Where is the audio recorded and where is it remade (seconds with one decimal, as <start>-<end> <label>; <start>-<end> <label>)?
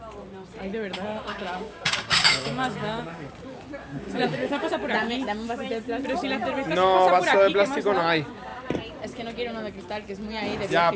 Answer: 0.0-1.1 recorded; 1.1-3.3 remade; 3.3-3.9 recorded; 3.9-4.7 remade; 4.7-11.0 recorded